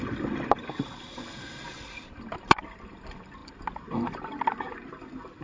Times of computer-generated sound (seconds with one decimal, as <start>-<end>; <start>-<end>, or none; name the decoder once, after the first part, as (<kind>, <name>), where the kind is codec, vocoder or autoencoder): none

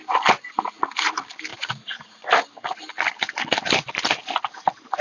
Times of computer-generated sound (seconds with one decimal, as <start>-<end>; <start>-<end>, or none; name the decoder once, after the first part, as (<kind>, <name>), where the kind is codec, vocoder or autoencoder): 1.5-2.3 (vocoder, Vocos)